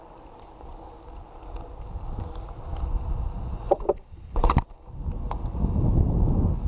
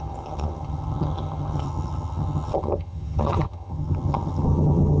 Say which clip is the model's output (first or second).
second